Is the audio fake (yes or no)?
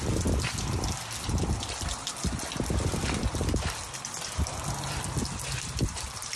no